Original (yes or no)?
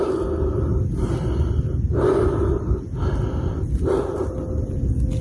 yes